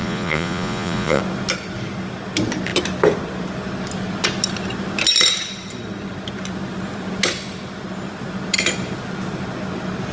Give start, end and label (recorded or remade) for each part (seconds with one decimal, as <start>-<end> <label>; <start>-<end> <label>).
0.0-1.2 remade; 1.2-10.1 recorded